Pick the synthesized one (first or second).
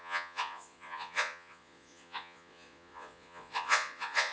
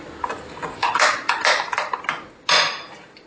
first